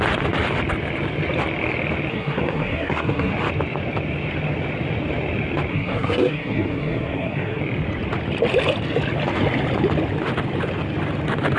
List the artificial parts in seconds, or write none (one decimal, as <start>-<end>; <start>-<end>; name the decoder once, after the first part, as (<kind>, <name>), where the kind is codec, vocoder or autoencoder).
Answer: 2.1-3.3 (codec, SNAC); 5.7-7.6